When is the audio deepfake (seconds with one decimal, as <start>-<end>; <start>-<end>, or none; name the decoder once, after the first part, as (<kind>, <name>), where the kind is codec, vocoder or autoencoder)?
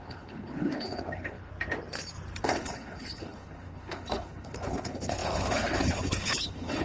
0.0-1.5 (codec, HILCodec); 2.4-6.8